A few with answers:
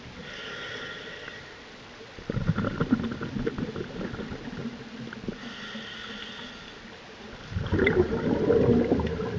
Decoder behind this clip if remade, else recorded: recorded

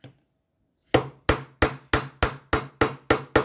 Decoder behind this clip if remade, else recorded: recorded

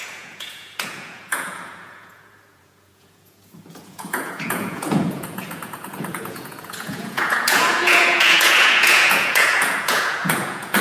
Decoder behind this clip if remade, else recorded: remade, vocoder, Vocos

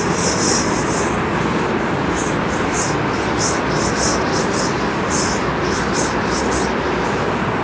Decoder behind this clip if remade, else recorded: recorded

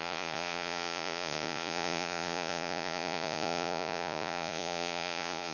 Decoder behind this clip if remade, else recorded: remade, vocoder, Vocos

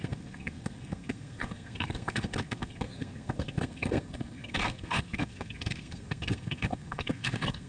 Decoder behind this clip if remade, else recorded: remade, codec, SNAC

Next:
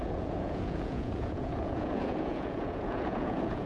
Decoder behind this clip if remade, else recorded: remade, vocoder, Vocos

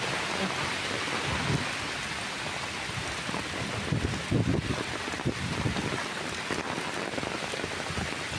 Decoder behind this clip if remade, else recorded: recorded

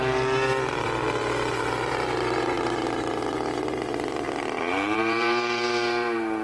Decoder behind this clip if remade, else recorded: remade, vocoder, BigVGAN v2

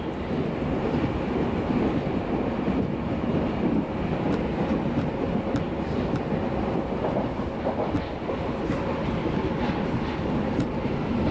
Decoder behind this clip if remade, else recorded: recorded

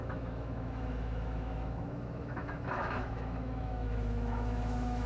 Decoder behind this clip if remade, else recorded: remade, autoencoder, DAC-VAE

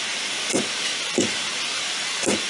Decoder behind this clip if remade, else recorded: recorded